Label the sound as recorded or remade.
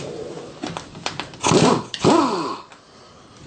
remade